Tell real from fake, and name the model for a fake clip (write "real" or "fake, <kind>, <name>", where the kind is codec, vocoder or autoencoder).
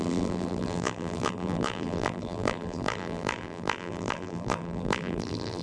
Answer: fake, vocoder, BigVGAN v2